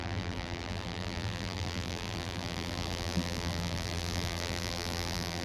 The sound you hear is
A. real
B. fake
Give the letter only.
B